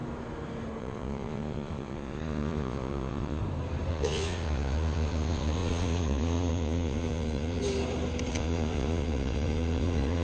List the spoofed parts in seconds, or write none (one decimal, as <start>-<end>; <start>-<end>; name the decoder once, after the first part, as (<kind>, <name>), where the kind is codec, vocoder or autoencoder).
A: 0.8-3.4 (vocoder, Vocos); 3.9-7.6; 8.3-10.2